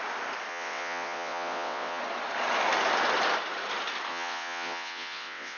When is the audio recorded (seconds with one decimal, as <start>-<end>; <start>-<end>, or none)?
0.0-0.5; 2.0-4.1

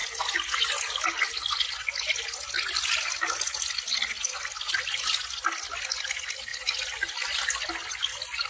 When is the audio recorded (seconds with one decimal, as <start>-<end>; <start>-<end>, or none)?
0.0-8.5

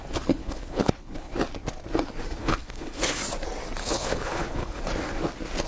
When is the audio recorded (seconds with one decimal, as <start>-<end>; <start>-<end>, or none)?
0.0-0.4; 1.3-2.4; 3.2-3.8; 4.8-5.7